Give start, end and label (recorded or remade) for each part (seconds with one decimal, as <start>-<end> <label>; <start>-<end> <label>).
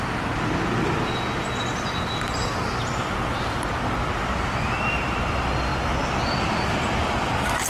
0.0-1.7 recorded; 1.7-2.7 remade; 2.7-7.7 recorded